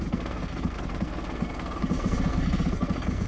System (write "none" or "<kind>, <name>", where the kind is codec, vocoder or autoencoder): codec, SNAC